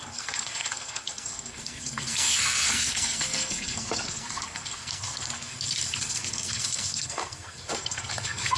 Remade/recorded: remade